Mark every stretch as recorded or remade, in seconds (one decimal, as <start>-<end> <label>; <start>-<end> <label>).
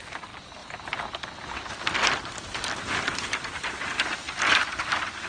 0.0-5.3 recorded